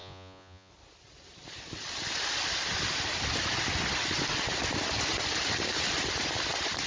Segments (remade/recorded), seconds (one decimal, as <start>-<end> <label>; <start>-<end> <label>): 0.0-0.7 remade; 0.7-6.9 recorded